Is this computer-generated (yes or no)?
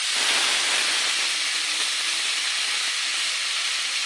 no